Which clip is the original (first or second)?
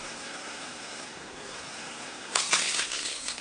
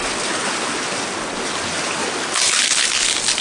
second